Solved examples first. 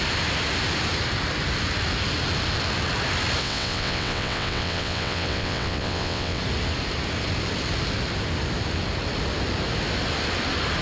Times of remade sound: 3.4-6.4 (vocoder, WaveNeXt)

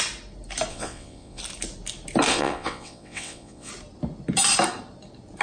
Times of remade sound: 0.7-1.4 (vocoder, WaveNeXt); 2.3-3.7

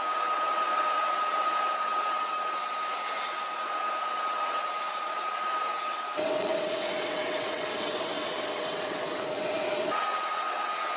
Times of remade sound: 0.0-11.0 (vocoder, WaveNeXt)